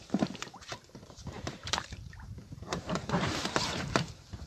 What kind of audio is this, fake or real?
fake